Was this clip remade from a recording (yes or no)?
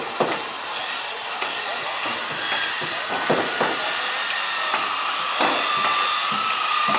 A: no